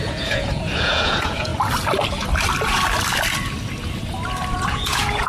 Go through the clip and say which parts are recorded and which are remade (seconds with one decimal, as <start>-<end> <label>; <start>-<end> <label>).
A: 0.0-1.5 remade; 1.5-4.7 recorded; 4.7-5.3 remade